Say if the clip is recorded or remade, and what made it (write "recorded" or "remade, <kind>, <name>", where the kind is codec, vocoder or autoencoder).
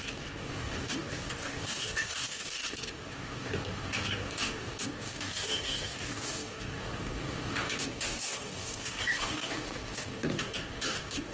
remade, codec, DAC